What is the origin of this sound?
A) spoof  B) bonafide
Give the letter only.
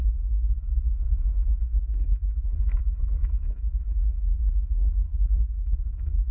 A